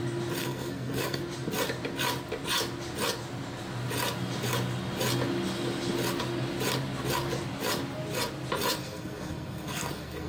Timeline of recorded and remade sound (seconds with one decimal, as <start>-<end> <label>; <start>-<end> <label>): 0.0-0.4 recorded; 0.4-1.2 remade; 1.2-8.8 recorded; 8.8-10.3 remade